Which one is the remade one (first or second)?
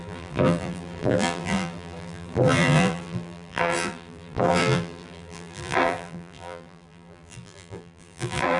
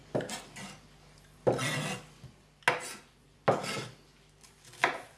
first